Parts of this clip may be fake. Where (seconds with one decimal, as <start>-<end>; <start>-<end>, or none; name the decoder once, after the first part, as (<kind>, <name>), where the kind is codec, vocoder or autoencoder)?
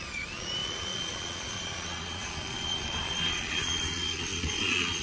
0.0-5.0 (vocoder, Vocos)